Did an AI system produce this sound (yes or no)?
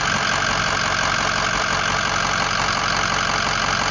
no